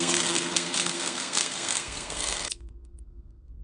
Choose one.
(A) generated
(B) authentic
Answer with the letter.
A